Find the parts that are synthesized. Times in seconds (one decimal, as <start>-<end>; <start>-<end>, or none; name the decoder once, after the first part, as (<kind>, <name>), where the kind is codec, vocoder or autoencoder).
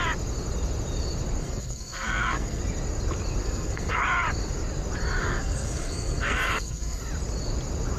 1.4-2.6 (codec, SNAC); 3.4-4.0; 5.2-7.0